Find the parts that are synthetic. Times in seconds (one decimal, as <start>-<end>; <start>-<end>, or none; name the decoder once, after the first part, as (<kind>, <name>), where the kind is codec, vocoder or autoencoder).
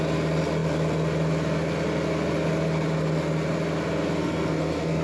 4.2-5.0 (codec, SNAC)